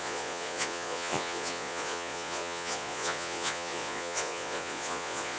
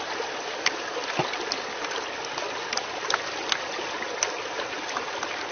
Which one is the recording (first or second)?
second